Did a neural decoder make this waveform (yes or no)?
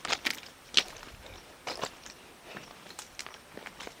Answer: no